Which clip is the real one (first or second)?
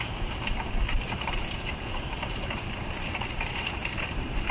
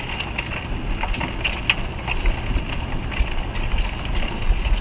second